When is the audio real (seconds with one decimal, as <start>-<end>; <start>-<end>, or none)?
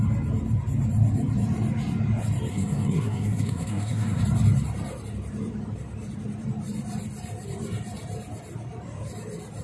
0.0-2.5; 4.2-9.6